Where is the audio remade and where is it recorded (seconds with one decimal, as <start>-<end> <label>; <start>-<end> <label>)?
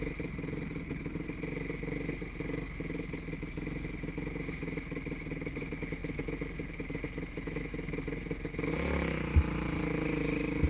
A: 0.0-10.7 recorded